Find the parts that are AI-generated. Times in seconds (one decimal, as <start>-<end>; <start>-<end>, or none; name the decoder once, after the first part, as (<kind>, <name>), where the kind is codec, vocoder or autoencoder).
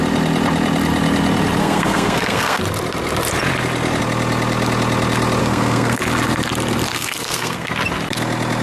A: 1.6-2.6 (codec, SNAC); 5.4-6.0; 6.9-7.7